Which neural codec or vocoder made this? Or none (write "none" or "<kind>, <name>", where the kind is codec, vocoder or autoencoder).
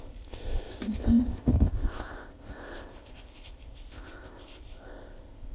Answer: codec, ZipCodec